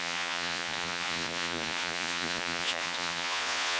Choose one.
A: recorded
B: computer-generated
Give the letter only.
B